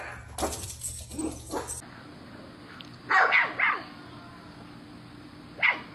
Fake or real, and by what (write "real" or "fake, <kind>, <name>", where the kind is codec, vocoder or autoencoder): real